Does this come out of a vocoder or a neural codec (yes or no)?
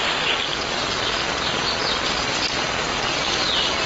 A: no